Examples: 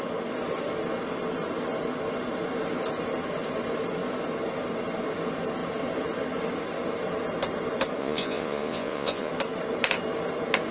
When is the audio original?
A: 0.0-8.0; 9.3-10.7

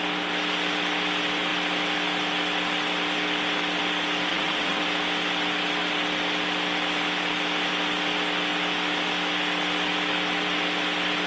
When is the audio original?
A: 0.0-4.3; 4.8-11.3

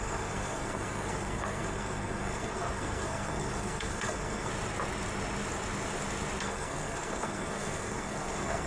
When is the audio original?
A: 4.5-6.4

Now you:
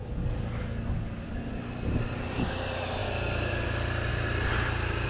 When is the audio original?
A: 0.0-5.1

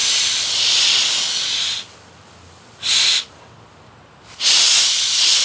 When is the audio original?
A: 0.0-5.4

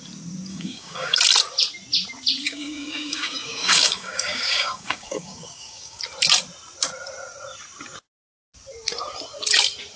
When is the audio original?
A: 0.0-0.5; 1.2-2.4; 6.0-10.0

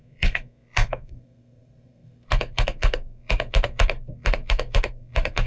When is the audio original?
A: none

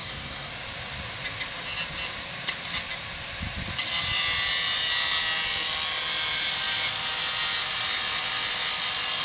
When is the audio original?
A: 0.5-9.2